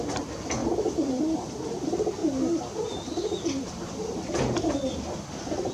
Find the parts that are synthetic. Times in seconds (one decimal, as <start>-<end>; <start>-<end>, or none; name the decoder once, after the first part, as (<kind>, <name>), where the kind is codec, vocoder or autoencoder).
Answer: 0.6-1.2 (vocoder, BigVGAN v2)